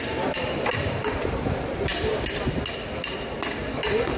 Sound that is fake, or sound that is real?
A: real